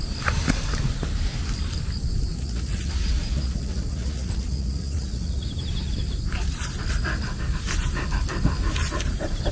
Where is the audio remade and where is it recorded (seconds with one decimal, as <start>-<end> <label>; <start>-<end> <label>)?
0.0-2.3 recorded; 2.3-5.5 remade; 5.5-9.5 recorded